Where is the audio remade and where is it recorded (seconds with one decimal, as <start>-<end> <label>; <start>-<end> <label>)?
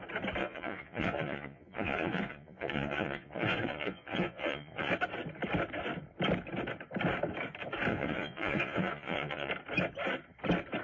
0.0-0.4 recorded; 0.4-4.9 remade; 4.9-7.9 recorded; 7.9-9.5 remade; 9.5-10.8 recorded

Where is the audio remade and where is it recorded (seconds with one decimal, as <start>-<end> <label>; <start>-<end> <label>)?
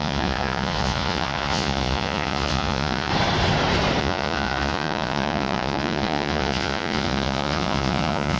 0.0-3.1 remade; 3.1-4.0 recorded; 4.0-8.4 remade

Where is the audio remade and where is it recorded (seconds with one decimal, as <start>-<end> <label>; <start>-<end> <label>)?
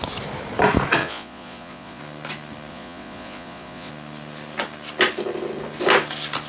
0.0-1.0 recorded; 1.0-2.0 remade; 2.0-2.7 recorded; 2.7-3.9 remade; 3.9-6.5 recorded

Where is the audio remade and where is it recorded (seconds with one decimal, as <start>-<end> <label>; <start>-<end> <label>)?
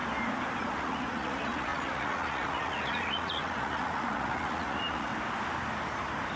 0.0-0.6 recorded; 0.6-5.1 remade; 5.1-6.4 recorded